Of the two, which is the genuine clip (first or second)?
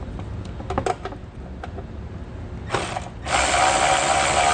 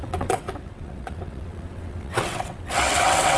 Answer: first